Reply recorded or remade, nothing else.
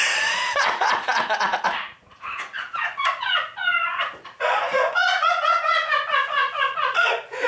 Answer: remade